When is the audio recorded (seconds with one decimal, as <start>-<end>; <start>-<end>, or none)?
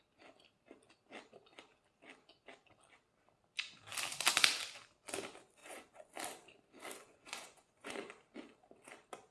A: 0.0-5.6; 6.1-7.0; 8.1-9.3